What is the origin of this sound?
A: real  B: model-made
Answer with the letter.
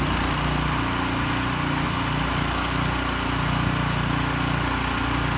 A